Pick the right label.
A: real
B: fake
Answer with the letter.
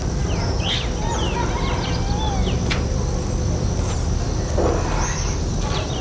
A